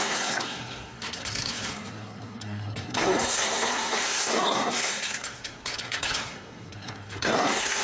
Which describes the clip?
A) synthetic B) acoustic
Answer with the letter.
A